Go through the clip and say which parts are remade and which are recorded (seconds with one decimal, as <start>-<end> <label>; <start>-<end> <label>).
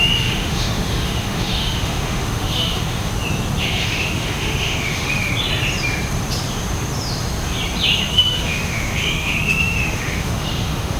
0.0-3.1 remade; 3.1-3.6 recorded; 3.6-5.3 remade; 5.3-8.1 recorded; 8.1-11.0 remade